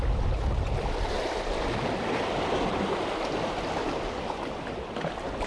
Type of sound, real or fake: real